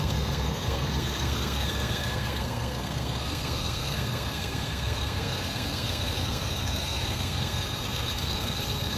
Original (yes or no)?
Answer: no